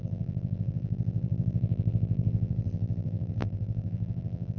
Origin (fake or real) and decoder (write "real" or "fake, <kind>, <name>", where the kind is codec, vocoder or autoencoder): fake, vocoder, BigVGAN v2